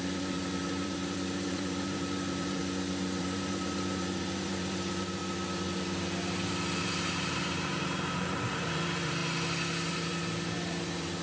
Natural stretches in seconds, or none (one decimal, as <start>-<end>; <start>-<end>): 2.6-3.2; 5.2-6.8; 9.2-9.9